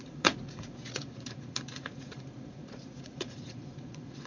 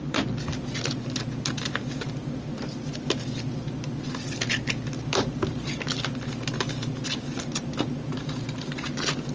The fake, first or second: first